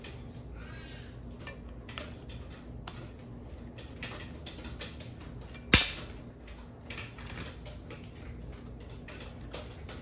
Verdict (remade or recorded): recorded